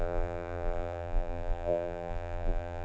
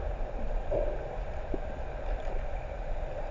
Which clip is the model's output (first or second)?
first